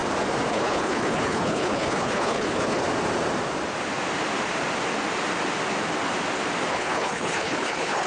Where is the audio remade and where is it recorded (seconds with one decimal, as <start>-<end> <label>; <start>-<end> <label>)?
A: 0.0-0.5 recorded; 0.5-2.8 remade; 2.8-6.7 recorded; 6.7-8.1 remade